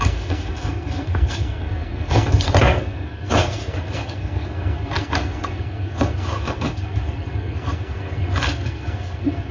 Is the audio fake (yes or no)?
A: yes